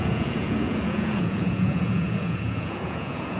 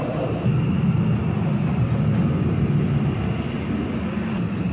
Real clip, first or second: second